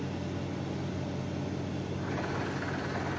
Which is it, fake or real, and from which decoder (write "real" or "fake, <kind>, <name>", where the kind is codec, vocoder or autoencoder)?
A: real